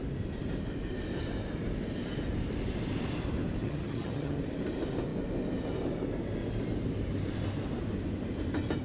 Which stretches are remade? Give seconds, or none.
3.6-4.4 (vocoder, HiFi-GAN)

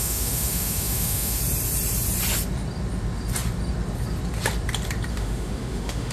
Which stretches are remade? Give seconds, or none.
0.0-1.4 (autoencoder, DAC-VAE); 5.1-6.1

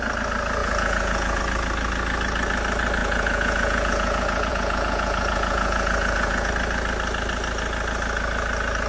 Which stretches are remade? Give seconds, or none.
0.6-1.4 (vocoder, Vocos); 3.0-6.5

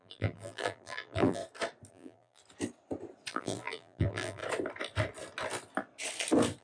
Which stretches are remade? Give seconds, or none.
0.0-1.4 (vocoder, BigVGAN v2); 1.9-2.4; 3.3-4.4

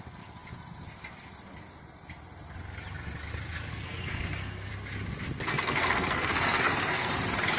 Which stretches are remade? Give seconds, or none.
3.7-4.7 (codec, SNAC); 5.5-7.1

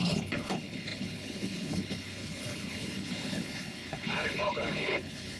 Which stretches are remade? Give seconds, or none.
0.0-5.4 (codec, HILCodec)

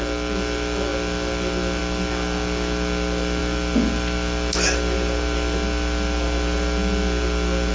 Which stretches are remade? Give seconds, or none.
none

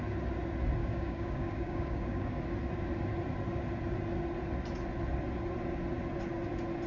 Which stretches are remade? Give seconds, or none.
0.8-2.4 (codec, DAC)